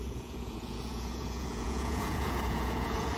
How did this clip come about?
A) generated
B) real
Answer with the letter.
A